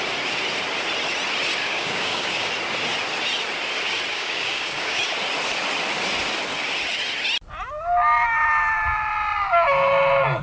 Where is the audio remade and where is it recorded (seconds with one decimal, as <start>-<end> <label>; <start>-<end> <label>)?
0.0-1.6 recorded; 1.6-2.5 remade; 2.5-4.1 recorded; 4.1-5.0 remade; 5.0-10.4 recorded